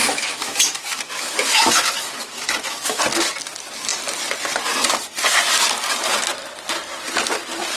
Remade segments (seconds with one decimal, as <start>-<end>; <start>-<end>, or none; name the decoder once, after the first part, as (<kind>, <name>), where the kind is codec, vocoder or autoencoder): 0.0-3.0 (autoencoder, DAC-VAE)

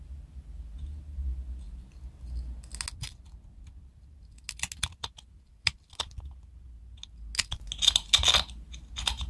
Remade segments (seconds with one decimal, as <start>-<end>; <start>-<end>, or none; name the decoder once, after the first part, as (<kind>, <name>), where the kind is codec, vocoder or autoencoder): none

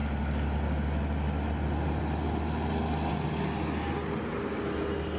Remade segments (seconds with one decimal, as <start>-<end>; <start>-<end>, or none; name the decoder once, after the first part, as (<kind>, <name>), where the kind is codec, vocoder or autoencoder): none

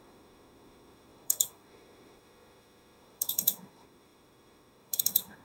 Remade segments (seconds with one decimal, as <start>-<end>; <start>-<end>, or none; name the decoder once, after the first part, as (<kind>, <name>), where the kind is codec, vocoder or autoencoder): 0.0-5.4 (autoencoder, DAC-VAE)

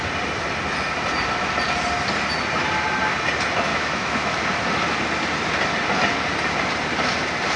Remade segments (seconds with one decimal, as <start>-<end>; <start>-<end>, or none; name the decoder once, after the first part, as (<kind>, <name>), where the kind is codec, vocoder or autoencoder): 3.7-4.4 (autoencoder, DAC-VAE)